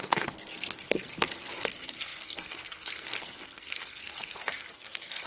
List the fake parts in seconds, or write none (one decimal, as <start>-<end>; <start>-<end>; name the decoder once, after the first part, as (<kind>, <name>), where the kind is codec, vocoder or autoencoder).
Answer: 0.0-5.3 (codec, SNAC)